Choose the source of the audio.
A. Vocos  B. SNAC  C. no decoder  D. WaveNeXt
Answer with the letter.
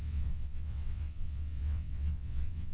D